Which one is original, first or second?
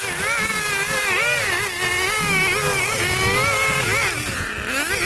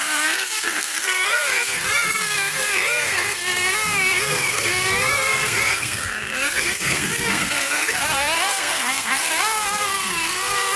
first